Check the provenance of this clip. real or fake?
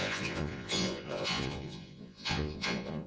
fake